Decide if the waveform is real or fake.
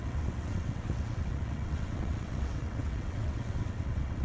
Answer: fake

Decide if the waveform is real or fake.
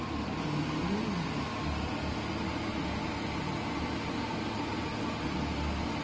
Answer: real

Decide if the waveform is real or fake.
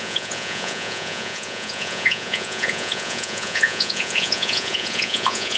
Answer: fake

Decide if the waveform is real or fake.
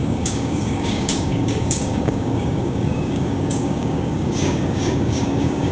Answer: fake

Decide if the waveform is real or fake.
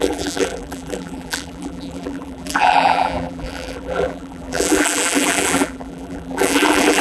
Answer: fake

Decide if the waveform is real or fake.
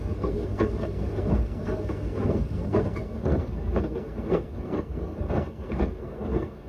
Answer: fake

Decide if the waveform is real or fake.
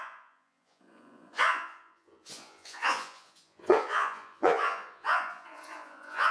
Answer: fake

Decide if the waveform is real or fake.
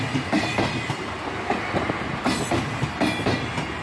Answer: real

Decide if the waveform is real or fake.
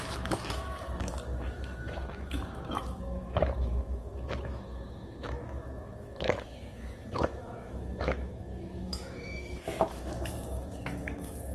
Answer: fake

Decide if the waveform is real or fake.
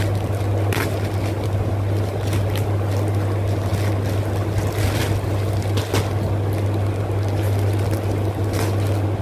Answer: real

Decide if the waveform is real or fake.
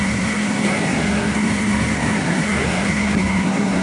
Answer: fake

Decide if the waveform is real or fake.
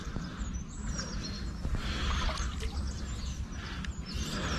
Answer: real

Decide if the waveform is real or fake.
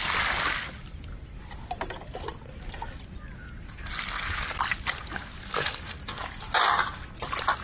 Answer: real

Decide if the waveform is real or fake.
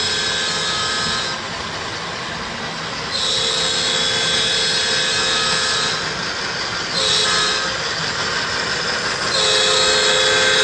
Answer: real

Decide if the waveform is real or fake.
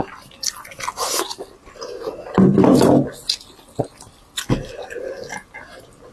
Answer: real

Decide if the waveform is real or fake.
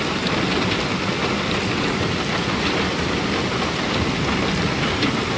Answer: real